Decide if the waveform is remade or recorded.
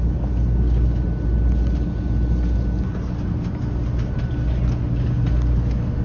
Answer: recorded